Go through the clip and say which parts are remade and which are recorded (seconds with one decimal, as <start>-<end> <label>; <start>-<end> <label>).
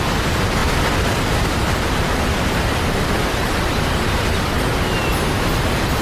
0.0-0.6 recorded; 0.6-4.2 remade; 4.2-6.0 recorded